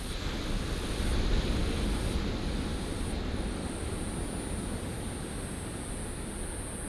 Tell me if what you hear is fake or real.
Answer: real